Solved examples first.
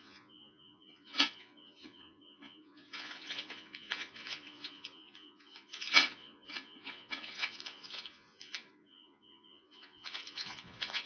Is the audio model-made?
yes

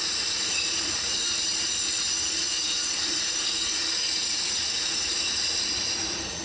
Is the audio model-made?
yes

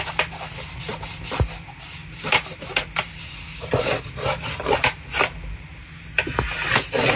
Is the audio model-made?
no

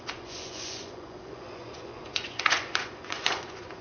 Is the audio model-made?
yes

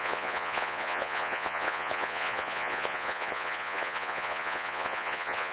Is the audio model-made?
yes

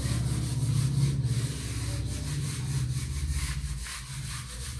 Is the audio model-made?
no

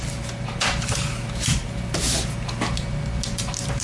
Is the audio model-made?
no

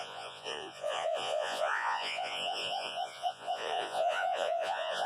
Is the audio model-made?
yes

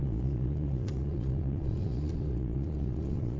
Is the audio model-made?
yes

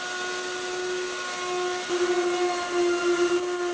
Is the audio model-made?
no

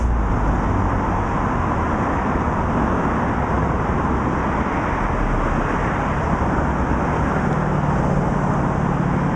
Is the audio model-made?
no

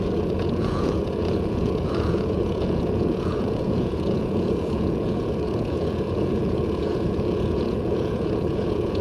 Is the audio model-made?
yes